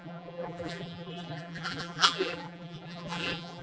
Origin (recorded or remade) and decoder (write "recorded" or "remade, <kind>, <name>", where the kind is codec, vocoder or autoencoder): remade, vocoder, BigVGAN v2